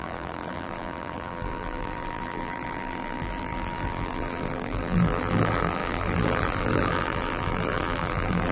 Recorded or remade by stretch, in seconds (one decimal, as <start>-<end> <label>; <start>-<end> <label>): 0.0-8.5 remade